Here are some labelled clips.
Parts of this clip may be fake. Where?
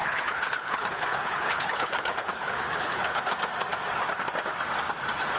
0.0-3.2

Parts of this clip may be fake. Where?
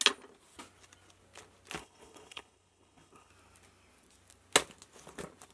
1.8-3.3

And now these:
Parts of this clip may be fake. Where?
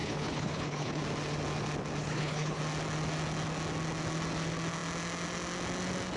0.0-1.0; 2.0-2.6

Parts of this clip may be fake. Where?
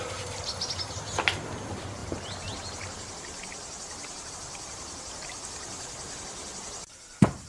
none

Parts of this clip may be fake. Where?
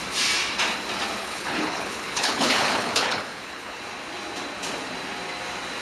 1.2-3.8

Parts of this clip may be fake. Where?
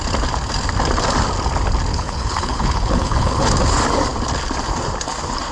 1.9-3.5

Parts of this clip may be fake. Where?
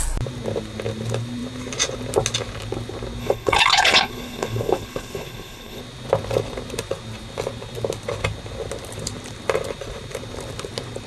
3.2-5.8